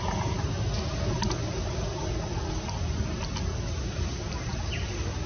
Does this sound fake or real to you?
real